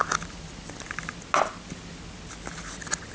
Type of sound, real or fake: real